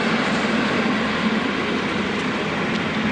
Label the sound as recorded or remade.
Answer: recorded